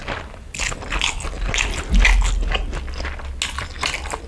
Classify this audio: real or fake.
real